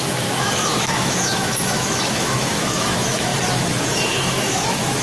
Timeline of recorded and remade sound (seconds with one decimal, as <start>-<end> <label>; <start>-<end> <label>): 0.0-3.3 remade; 3.3-3.9 recorded; 3.9-5.0 remade